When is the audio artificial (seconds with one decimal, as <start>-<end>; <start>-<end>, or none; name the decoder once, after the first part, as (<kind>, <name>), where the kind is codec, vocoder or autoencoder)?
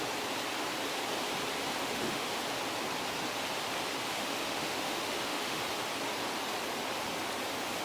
1.8-2.4 (autoencoder, DAC-VAE); 4.1-5.6